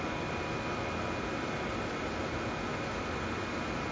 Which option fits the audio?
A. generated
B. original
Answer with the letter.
B